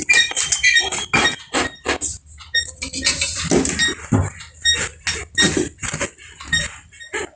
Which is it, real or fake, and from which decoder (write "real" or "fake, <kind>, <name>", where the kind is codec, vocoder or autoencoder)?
real